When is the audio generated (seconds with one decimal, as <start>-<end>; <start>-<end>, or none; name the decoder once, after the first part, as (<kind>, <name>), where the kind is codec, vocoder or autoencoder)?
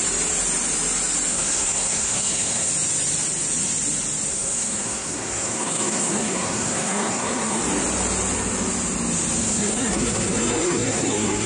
1.3-2.7 (codec, SNAC); 4.3-7.6; 9.4-11.5